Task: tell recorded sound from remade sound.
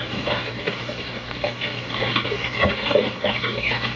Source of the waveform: remade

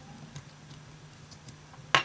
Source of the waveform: recorded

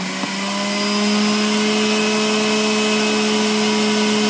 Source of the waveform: recorded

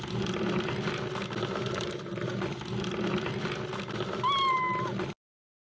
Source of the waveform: recorded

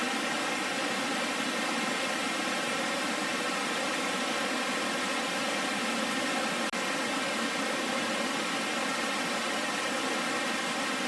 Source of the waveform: recorded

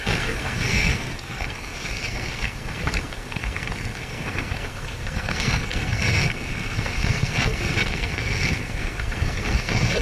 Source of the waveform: remade